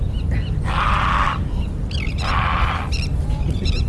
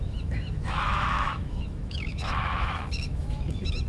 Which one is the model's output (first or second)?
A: second